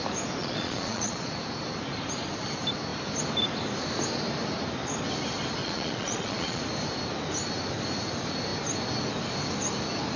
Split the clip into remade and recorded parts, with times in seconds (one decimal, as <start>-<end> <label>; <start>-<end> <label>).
0.0-0.4 recorded; 0.4-1.3 remade; 1.3-5.6 recorded; 5.6-6.6 remade; 6.6-10.2 recorded